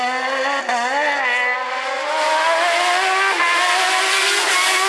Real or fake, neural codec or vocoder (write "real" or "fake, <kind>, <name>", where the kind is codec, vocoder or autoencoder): real